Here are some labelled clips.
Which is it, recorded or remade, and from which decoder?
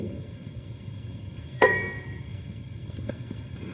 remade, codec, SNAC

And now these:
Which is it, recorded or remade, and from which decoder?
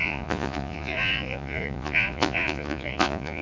remade, vocoder, Vocos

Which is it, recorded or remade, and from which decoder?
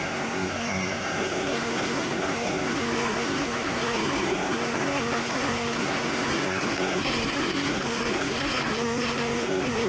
remade, codec, SNAC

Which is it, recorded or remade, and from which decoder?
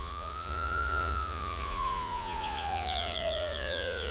remade, vocoder, Vocos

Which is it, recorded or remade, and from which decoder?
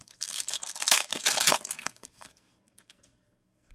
remade, codec, SNAC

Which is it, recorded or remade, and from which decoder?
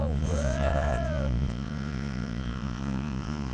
remade, vocoder, Vocos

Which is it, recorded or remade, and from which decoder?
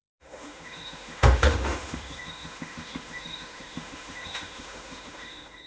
remade, autoencoder, DAC-VAE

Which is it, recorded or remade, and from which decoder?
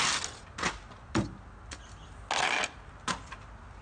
recorded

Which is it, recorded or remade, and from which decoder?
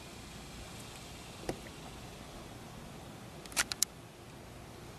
recorded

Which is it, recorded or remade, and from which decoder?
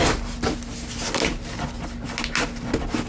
recorded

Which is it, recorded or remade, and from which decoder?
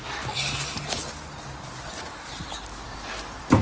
recorded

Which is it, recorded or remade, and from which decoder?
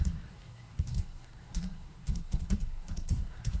remade, codec, SNAC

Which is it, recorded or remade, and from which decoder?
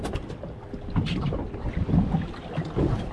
recorded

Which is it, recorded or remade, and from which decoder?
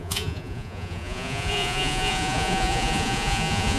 remade, vocoder, Vocos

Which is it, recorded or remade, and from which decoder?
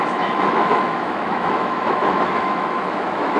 remade, autoencoder, DAC-VAE